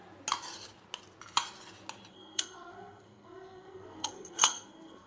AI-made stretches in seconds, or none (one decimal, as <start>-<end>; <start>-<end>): 2.1-5.1